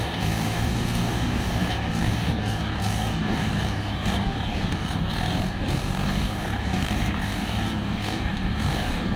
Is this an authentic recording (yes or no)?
no